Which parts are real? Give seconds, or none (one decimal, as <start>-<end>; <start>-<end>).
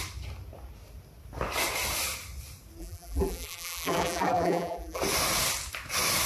0.0-2.8; 5.0-6.3